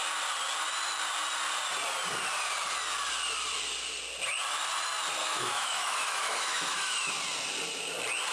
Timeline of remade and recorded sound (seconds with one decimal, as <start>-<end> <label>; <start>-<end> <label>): 0.0-5.2 recorded; 5.2-7.1 remade; 7.1-8.3 recorded